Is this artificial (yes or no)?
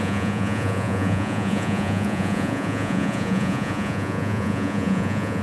yes